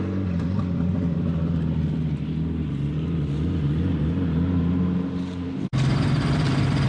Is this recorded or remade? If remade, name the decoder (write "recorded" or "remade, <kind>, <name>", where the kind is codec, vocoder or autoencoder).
recorded